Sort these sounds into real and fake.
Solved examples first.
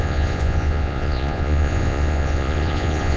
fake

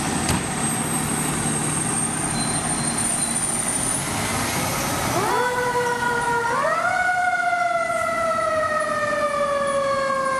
real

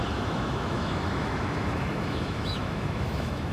fake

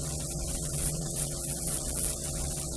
fake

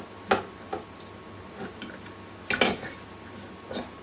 real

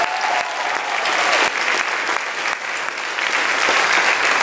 real